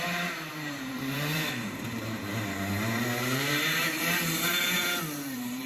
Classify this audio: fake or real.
fake